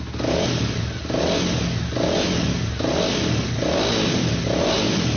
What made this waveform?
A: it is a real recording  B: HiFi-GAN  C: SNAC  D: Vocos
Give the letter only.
A